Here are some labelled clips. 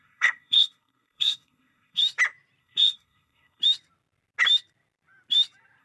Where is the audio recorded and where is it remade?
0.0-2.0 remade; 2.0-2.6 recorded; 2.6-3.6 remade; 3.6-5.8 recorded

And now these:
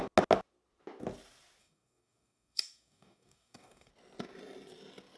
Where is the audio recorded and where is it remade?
0.0-1.6 recorded; 1.6-3.9 remade; 3.9-5.2 recorded

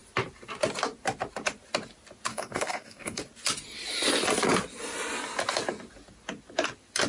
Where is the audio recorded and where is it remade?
0.0-2.3 recorded; 2.3-3.2 remade; 3.2-7.1 recorded

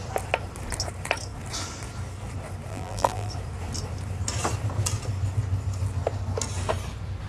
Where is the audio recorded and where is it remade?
0.0-2.7 recorded; 2.7-3.3 remade; 3.3-7.3 recorded

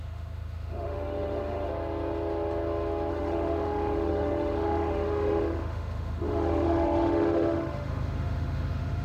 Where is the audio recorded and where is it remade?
0.0-1.7 remade; 1.7-3.1 recorded; 3.1-9.0 remade

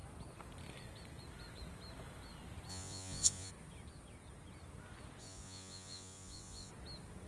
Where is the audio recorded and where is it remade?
0.0-2.7 recorded; 2.7-3.5 remade; 3.5-5.2 recorded; 5.2-6.7 remade; 6.7-7.3 recorded

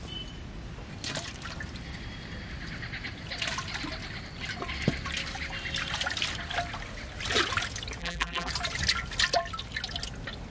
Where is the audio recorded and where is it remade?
0.0-8.0 recorded; 8.0-8.5 remade; 8.5-10.5 recorded